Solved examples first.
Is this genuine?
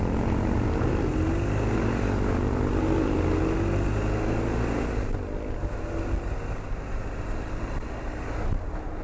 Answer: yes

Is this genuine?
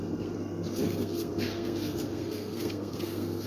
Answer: no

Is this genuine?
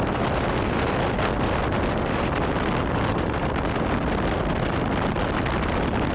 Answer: yes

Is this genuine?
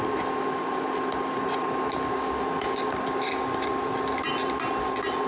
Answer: yes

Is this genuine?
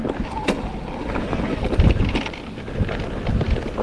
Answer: yes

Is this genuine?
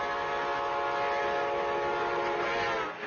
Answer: yes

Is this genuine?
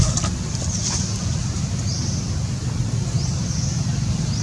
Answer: yes